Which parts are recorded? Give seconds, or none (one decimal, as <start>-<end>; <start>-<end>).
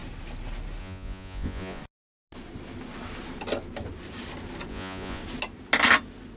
0.0-0.8; 1.8-4.7; 5.2-6.4